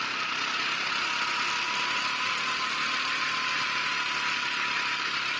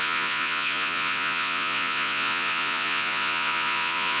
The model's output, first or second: second